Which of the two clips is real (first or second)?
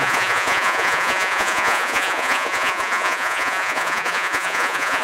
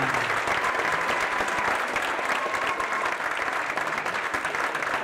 second